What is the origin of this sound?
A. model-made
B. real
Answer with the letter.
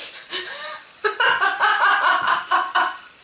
A